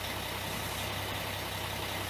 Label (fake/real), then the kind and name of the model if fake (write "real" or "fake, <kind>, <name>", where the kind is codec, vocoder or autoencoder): real